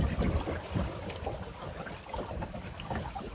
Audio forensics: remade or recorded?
recorded